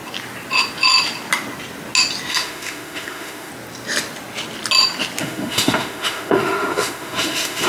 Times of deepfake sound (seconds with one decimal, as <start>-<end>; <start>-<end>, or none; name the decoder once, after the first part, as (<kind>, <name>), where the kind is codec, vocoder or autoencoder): 2.3-3.5 (autoencoder, DAC-VAE); 5.2-7.7